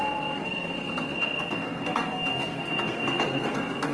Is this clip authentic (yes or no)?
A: no